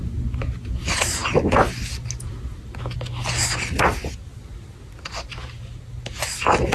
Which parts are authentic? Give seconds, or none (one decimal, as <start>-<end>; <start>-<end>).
0.0-6.7